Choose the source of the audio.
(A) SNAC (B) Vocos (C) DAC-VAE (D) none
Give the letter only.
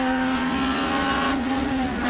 B